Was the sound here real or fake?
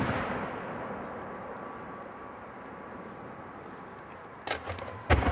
real